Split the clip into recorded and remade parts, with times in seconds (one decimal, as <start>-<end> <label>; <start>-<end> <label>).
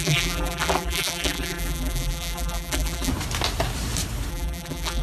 0.0-3.1 remade; 3.1-4.3 recorded; 4.3-5.0 remade